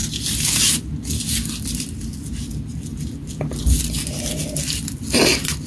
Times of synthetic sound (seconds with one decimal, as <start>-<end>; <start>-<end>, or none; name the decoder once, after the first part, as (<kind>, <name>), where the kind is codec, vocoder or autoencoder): none